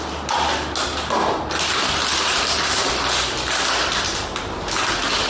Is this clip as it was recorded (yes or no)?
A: yes